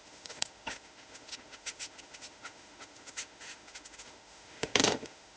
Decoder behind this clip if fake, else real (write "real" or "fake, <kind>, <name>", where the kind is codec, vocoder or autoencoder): fake, autoencoder, DAC-VAE